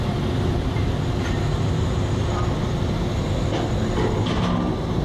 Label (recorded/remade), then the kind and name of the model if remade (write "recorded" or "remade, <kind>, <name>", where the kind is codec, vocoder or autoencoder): recorded